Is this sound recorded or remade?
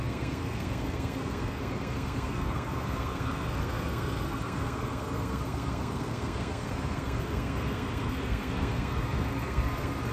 remade